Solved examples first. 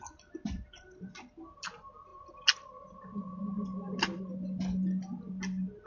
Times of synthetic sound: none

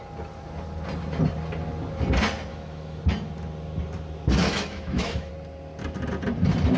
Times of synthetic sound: 2.5-3.0 (autoencoder, DAC-VAE); 4.4-5.3

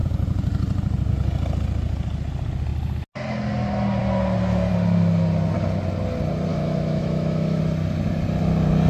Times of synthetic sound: 6.5-7.6 (autoencoder, DAC-VAE)

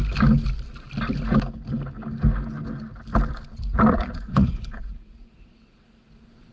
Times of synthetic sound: 3.9-6.5 (vocoder, Vocos)

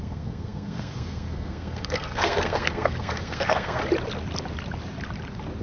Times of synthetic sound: 0.0-3.8 (codec, SNAC)

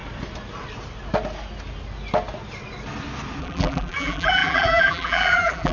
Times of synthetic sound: 3.4-5.7 (vocoder, BigVGAN v2)